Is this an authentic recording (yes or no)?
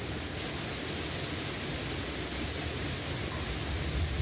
yes